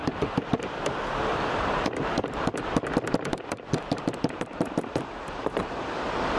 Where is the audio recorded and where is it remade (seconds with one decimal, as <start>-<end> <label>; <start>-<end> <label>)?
0.0-0.7 remade; 0.7-1.3 recorded; 1.3-2.7 remade; 2.7-3.3 recorded; 3.3-5.6 remade; 5.6-6.4 recorded